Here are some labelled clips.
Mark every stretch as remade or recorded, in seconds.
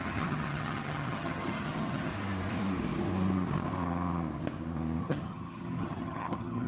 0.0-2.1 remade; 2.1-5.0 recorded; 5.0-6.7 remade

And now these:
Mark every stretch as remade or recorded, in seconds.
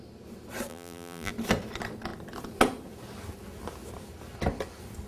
0.0-0.7 recorded; 0.7-1.3 remade; 1.3-5.1 recorded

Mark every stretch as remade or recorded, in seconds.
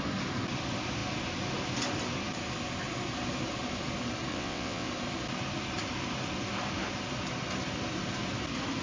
0.0-4.3 recorded; 4.3-4.9 remade; 4.9-8.8 recorded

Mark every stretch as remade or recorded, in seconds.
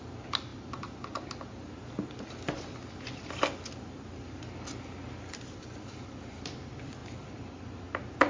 0.0-8.3 recorded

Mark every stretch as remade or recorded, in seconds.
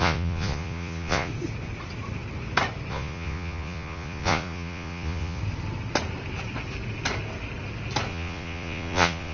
0.0-1.3 remade; 1.3-2.9 recorded; 2.9-5.4 remade; 5.4-8.1 recorded; 8.1-9.3 remade